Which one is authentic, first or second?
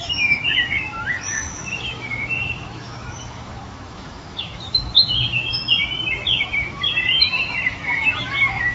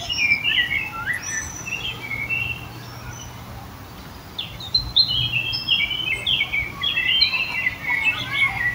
second